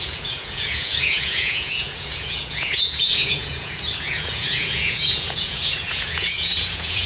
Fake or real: fake